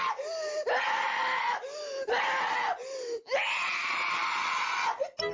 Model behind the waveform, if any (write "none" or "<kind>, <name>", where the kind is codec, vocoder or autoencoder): none